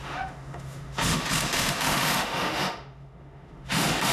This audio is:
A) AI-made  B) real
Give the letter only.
A